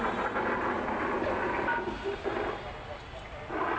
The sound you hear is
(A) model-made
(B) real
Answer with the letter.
B